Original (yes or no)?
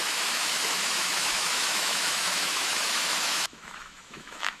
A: no